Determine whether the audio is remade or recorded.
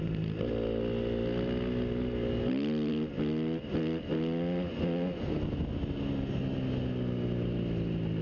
recorded